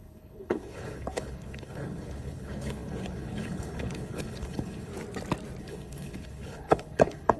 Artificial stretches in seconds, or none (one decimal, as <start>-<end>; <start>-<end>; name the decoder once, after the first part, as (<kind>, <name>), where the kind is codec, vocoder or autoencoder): 0.0-4.9 (codec, HILCodec); 5.6-7.4